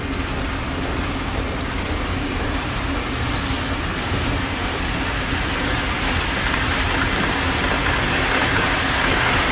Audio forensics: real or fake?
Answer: real